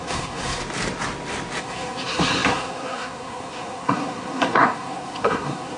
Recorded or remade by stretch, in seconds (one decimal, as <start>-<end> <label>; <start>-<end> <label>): 0.0-0.6 remade; 0.6-1.6 recorded; 1.6-5.8 remade